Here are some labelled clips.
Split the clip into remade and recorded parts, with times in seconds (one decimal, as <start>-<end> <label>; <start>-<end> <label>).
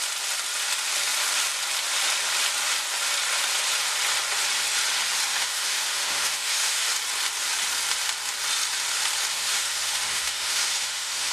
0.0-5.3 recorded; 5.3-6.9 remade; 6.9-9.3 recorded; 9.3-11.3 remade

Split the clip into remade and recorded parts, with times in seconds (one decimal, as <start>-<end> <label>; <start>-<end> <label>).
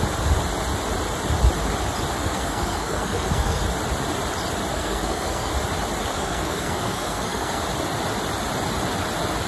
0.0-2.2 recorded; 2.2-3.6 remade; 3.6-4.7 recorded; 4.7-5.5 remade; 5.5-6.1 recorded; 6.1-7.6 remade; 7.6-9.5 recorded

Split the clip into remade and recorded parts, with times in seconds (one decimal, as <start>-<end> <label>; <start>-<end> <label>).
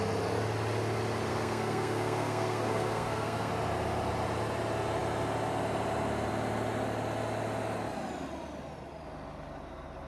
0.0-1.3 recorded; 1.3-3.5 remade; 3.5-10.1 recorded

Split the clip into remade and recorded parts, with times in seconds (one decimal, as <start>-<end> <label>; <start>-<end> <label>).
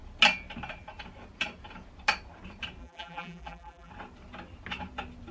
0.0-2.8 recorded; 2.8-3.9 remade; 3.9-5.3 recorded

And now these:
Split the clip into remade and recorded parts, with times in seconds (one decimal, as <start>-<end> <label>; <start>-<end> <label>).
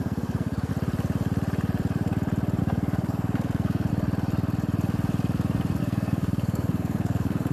0.0-0.7 remade; 0.7-2.6 recorded; 2.6-3.9 remade; 3.9-5.8 recorded; 5.8-7.5 remade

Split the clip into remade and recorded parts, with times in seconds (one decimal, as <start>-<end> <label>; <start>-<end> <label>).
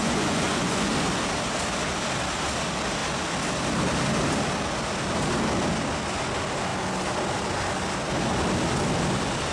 0.0-0.9 remade; 0.9-9.5 recorded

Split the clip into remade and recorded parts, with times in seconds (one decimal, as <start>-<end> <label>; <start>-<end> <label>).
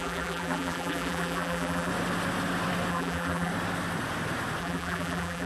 0.0-1.9 remade; 1.9-2.9 recorded; 2.9-3.5 remade; 3.5-4.6 recorded; 4.6-5.5 remade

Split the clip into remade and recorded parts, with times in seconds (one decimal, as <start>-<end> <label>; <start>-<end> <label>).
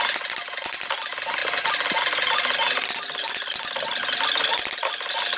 0.0-5.4 recorded